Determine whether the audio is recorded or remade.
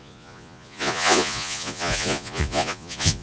remade